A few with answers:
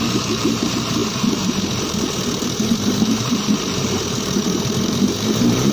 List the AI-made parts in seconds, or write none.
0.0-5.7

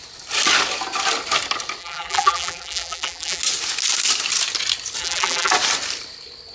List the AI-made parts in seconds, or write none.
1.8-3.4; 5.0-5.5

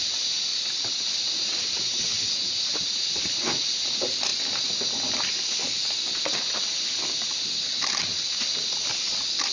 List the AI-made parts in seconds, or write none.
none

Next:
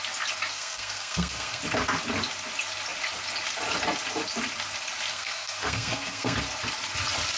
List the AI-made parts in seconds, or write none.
0.5-1.6; 5.1-6.4

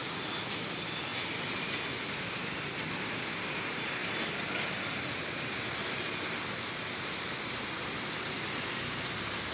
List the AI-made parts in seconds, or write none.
none

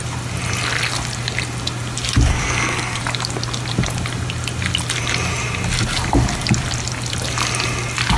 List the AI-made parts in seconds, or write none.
2.3-3.0